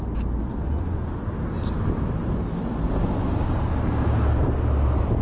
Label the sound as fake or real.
real